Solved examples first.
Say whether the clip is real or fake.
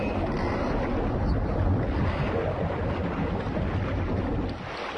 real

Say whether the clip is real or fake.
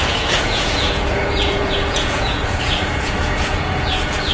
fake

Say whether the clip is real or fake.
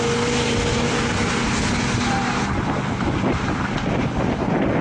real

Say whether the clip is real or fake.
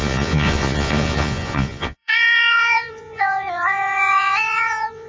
fake